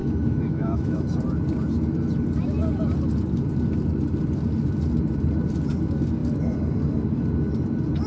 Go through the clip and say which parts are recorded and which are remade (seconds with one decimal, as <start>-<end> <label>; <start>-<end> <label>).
0.0-1.2 remade; 1.2-8.1 recorded